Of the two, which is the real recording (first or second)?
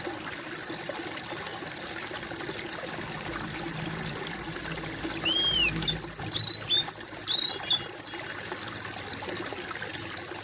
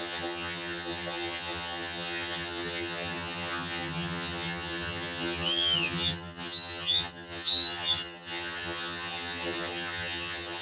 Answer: first